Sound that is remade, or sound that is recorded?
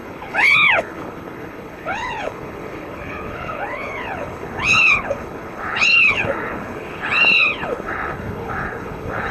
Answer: remade